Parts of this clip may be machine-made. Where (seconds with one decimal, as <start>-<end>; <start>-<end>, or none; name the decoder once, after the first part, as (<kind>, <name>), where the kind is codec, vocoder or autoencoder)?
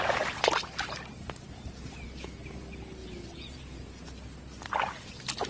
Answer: 3.0-3.9 (vocoder, Vocos)